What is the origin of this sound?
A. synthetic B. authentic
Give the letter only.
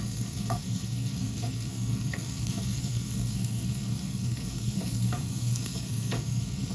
A